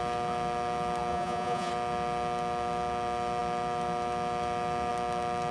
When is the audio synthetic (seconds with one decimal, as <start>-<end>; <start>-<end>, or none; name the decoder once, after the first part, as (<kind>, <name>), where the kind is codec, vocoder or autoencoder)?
1.1-1.7 (vocoder, Vocos)